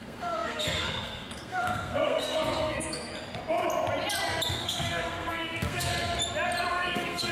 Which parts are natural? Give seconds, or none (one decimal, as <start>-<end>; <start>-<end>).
3.1-4.5; 5.9-6.7